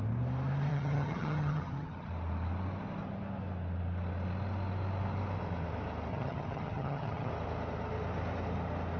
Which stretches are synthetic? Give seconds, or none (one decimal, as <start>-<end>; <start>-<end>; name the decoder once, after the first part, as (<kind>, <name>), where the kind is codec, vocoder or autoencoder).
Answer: 0.7-2.1 (vocoder, HiFi-GAN); 6.1-7.3